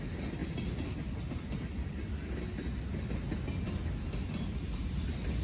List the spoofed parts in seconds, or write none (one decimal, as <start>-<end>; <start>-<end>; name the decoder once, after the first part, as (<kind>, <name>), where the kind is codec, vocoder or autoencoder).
none